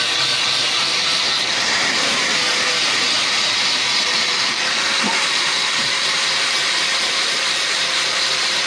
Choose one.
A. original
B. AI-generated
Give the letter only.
B